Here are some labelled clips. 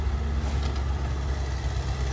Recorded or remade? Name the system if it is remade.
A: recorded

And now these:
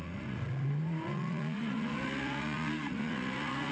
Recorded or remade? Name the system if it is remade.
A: remade, vocoder, Vocos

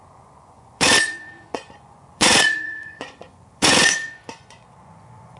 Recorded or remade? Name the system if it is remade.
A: remade, vocoder, Vocos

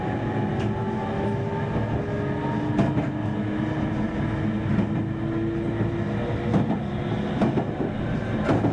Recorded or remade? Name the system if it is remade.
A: recorded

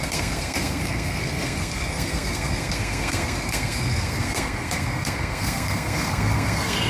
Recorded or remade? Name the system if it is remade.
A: remade, codec, SNAC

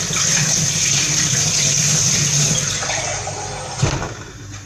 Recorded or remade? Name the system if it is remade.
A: recorded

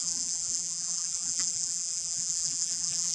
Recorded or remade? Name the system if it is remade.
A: remade, vocoder, BigVGAN v2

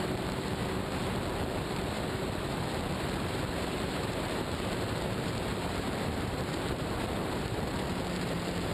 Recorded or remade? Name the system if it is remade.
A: remade, vocoder, BigVGAN v2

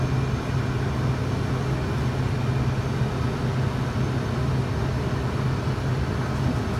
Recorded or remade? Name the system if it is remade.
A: recorded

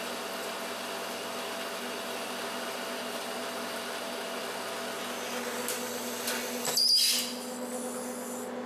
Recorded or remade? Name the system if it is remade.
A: recorded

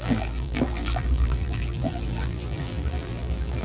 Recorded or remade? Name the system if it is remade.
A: remade, vocoder, BigVGAN v2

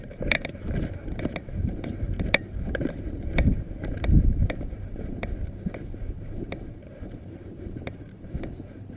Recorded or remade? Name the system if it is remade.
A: remade, vocoder, BigVGAN v2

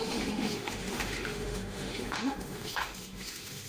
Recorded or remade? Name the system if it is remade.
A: remade, autoencoder, DAC-VAE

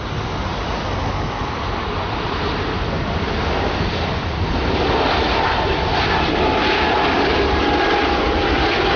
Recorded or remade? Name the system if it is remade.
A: recorded